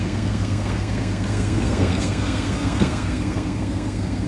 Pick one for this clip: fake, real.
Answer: fake